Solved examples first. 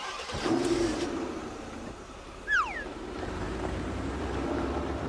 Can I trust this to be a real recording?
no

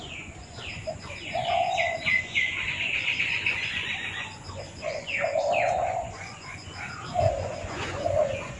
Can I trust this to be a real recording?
no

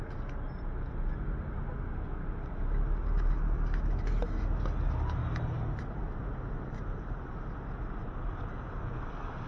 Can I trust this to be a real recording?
yes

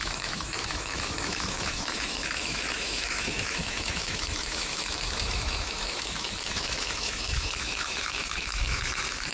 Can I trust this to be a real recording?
no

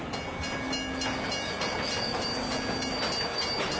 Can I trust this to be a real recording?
yes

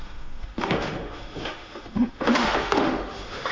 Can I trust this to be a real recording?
no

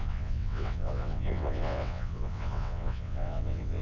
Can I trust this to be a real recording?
no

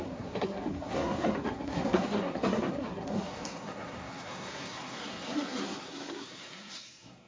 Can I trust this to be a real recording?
no